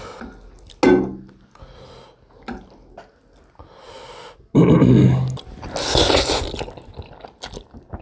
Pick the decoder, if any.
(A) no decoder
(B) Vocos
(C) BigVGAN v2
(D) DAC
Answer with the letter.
A